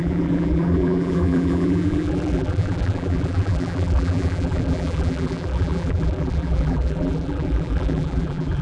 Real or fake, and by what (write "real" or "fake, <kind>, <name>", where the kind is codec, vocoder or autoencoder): fake, vocoder, BigVGAN v2